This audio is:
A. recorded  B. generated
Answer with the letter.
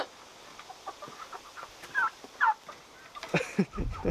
A